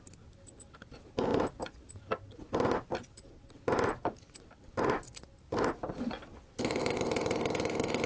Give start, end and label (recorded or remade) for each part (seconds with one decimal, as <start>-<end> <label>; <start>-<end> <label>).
0.0-8.1 recorded